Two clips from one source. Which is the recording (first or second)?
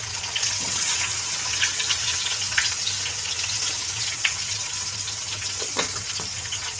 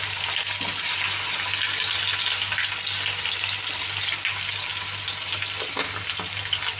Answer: second